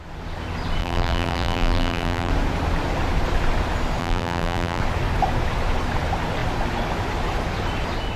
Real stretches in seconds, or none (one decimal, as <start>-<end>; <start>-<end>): 0.0-0.8; 2.3-4.0; 4.8-8.2